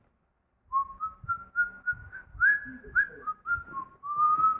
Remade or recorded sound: recorded